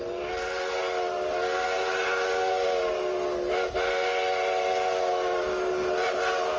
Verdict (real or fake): real